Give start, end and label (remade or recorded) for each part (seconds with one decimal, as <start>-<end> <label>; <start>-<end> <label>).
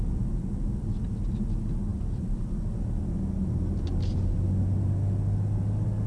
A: 0.0-6.1 recorded